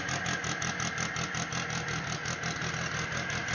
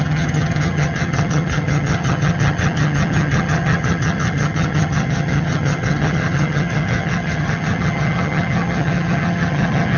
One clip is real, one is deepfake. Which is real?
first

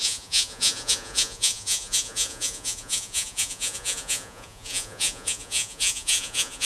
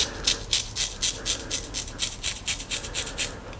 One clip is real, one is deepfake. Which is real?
second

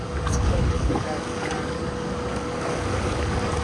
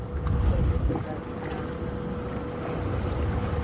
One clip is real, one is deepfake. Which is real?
second